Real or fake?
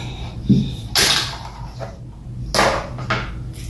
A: real